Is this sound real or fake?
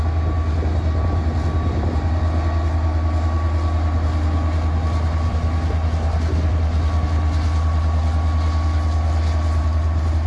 real